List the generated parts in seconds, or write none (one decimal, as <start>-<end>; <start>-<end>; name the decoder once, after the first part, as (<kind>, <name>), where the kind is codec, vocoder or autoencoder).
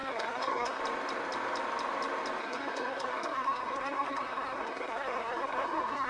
0.0-0.8 (codec, SNAC); 2.4-6.1